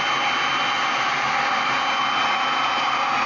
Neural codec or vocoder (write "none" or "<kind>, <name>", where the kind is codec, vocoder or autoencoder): none